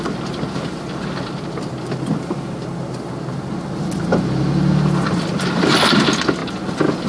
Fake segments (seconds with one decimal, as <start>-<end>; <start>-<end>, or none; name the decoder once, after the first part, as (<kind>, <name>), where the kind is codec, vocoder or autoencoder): none